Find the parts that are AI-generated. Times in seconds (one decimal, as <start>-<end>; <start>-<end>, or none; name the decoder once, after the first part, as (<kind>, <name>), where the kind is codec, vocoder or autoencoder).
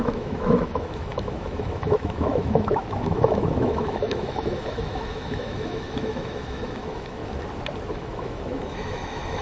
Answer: 0.0-7.2 (autoencoder, DAC-VAE); 7.9-9.4